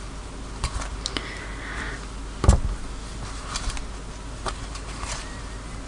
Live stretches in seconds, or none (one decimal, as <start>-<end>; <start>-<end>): 0.0-5.9